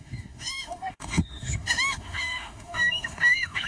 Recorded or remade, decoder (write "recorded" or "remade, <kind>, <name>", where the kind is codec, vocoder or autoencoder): remade, autoencoder, DAC-VAE